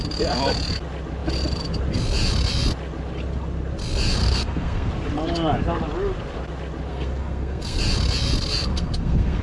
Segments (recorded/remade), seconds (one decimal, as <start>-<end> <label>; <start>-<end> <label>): 0.0-4.2 recorded; 4.2-4.9 remade; 4.9-6.9 recorded; 6.9-7.8 remade; 7.8-8.7 recorded; 8.7-9.4 remade